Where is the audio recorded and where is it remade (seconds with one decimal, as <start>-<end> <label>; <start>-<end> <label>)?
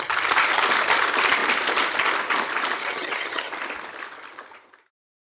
0.0-2.8 recorded; 2.8-3.5 remade; 3.5-5.3 recorded